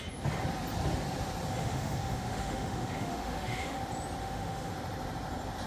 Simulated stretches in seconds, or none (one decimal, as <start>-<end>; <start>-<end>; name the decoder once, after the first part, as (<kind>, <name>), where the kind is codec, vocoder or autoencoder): 1.6-3.8 (autoencoder, DAC-VAE); 4.2-4.7